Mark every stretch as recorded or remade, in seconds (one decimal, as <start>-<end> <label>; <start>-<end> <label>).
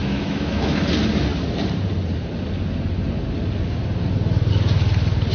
0.0-0.8 remade; 0.8-5.3 recorded